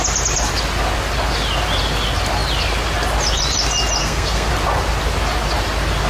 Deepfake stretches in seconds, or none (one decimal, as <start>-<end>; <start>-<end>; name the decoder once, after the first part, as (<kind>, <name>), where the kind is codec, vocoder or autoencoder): 4.0-4.5 (codec, SNAC)